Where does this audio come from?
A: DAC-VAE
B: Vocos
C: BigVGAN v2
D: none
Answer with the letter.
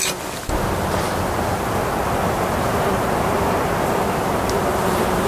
D